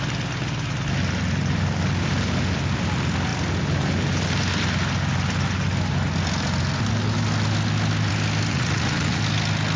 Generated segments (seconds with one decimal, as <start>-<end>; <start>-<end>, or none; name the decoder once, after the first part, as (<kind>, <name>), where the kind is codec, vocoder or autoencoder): 8.5-9.2 (vocoder, Vocos)